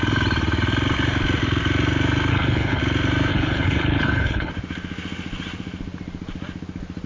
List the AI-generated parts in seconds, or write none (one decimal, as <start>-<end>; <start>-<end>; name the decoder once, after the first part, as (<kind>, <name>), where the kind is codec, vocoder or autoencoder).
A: 2.3-2.8 (codec, HILCodec); 3.3-4.5